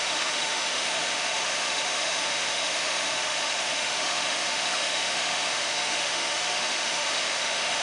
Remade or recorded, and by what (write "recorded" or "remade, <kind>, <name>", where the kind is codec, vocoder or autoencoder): remade, autoencoder, DAC-VAE